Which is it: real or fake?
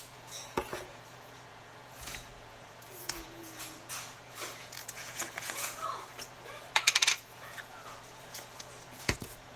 fake